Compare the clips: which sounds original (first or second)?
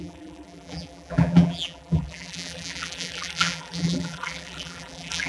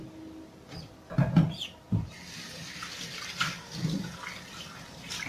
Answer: second